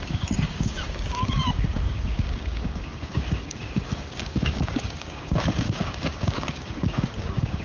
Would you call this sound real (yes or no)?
no